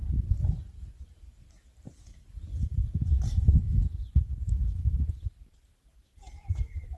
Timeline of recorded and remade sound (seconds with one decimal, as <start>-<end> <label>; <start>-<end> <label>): 0.0-1.1 recorded; 1.1-7.0 remade

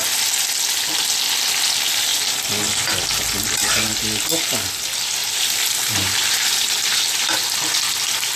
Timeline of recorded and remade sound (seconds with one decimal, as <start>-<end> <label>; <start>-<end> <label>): 0.0-5.2 recorded; 5.2-7.0 remade; 7.0-8.4 recorded

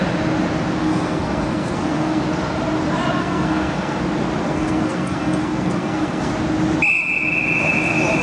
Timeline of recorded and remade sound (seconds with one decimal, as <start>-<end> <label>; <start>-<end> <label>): 0.0-0.8 recorded; 0.8-2.2 remade; 2.2-3.2 recorded; 3.2-4.0 remade; 4.0-4.4 recorded; 4.4-6.3 remade; 6.3-8.2 recorded

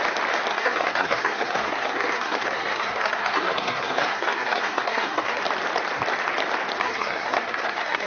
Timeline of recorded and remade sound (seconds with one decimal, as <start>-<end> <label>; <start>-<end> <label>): 0.0-0.5 recorded; 0.5-5.4 remade; 5.4-6.8 recorded; 6.8-8.1 remade

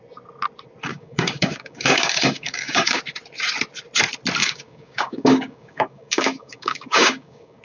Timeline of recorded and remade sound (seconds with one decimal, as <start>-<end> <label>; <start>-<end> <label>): 0.0-0.9 recorded; 0.9-3.0 remade; 3.0-4.4 recorded; 4.4-7.6 remade

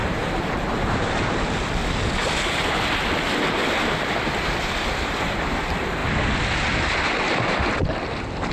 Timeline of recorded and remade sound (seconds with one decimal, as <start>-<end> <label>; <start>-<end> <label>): 0.0-8.5 recorded